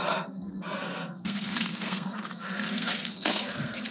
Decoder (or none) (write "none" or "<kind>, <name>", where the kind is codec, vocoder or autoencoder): codec, SNAC